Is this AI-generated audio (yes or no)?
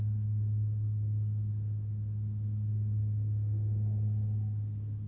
no